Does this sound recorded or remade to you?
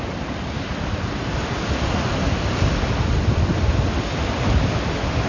recorded